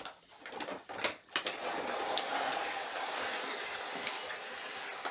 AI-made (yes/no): no